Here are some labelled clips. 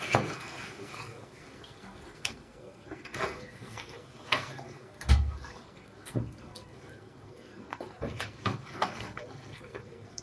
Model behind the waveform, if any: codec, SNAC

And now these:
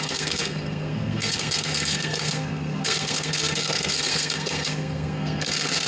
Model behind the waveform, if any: codec, SNAC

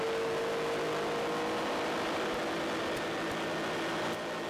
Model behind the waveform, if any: none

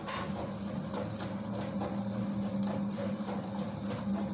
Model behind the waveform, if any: none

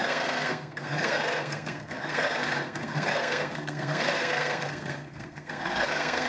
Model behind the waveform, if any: codec, SNAC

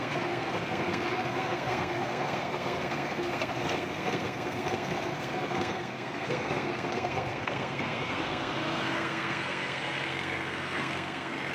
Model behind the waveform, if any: codec, SNAC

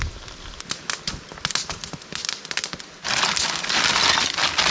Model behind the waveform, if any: none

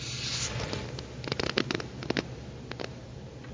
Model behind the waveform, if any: none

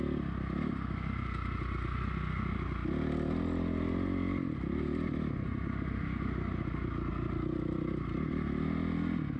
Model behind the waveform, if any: none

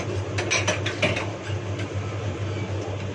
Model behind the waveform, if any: none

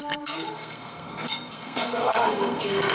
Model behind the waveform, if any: codec, SNAC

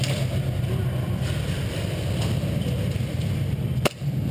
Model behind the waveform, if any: none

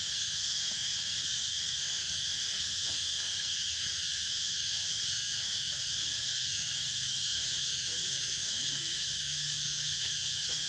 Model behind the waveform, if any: codec, SNAC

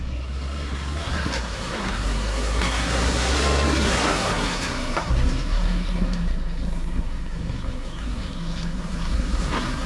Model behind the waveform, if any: codec, SNAC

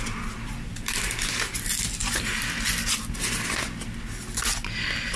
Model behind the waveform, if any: none